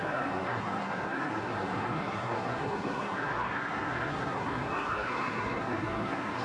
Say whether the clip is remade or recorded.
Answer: remade